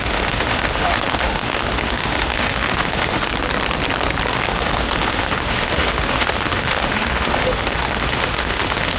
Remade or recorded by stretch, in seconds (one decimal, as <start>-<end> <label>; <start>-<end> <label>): 0.0-3.3 remade; 3.3-4.3 recorded; 4.3-9.0 remade